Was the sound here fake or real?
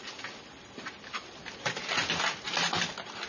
real